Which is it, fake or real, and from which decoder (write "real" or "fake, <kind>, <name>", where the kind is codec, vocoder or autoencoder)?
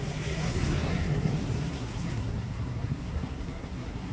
fake, codec, SNAC